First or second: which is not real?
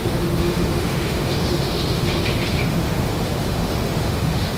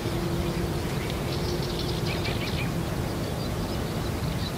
first